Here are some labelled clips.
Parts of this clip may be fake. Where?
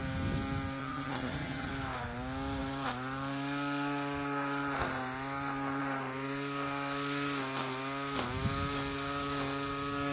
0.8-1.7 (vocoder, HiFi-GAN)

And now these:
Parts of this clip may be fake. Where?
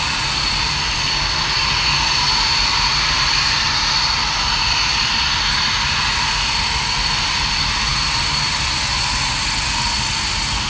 none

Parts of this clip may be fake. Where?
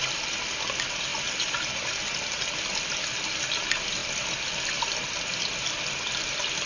none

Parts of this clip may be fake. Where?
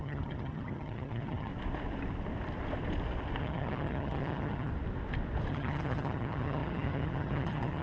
0.0-1.5 (vocoder, HiFi-GAN); 3.4-4.7; 5.5-7.8